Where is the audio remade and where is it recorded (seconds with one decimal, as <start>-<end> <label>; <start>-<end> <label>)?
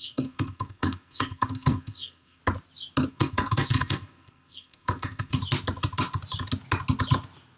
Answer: 0.0-2.4 remade; 2.4-3.1 recorded; 3.1-5.4 remade; 5.4-7.6 recorded